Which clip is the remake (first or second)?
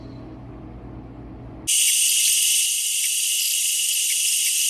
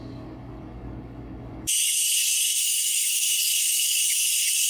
second